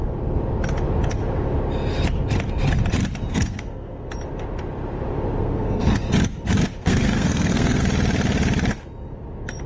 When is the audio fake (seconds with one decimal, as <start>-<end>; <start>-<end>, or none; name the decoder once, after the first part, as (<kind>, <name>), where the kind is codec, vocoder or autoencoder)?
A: 3.3-4.1 (codec, SNAC); 5.4-5.9; 6.8-7.8